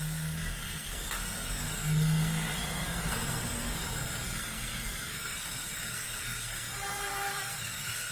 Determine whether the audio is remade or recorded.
remade